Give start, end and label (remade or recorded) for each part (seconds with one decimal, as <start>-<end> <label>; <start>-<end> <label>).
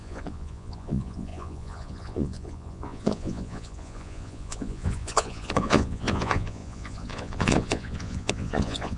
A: 0.0-9.0 remade